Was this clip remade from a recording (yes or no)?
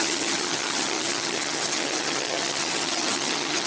yes